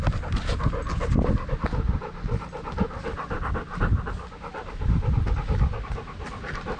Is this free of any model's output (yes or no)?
yes